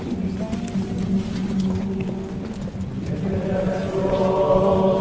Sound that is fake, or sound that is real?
real